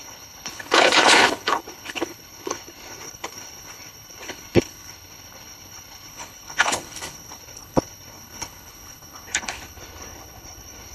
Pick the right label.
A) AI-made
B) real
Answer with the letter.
A